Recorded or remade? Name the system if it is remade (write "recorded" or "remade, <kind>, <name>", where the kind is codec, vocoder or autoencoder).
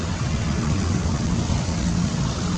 remade, vocoder, WaveNeXt